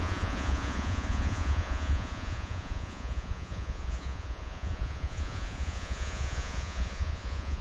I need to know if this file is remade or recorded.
remade